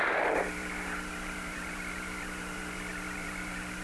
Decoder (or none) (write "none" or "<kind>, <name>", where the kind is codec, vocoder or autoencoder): vocoder, BigVGAN v2